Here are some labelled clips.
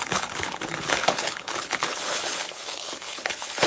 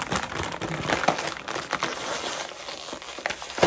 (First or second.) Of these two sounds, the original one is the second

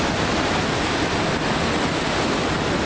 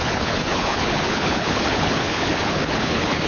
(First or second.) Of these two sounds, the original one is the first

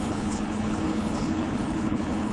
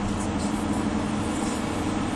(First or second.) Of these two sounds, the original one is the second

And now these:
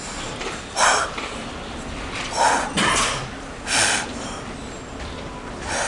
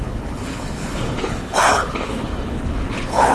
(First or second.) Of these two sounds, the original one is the first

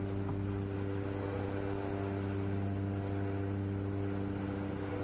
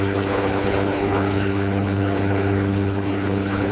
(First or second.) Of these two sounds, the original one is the first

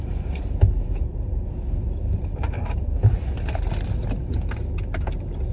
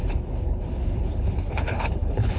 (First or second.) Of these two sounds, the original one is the first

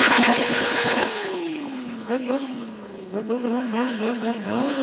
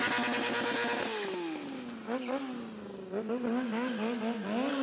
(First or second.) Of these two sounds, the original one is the second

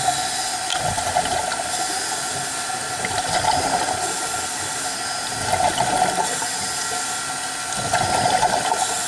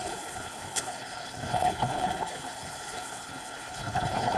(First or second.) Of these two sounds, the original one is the first